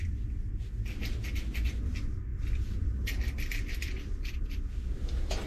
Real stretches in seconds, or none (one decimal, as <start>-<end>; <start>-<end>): 0.0-5.5